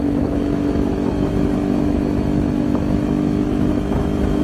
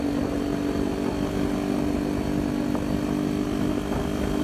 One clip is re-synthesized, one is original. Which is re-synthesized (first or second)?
first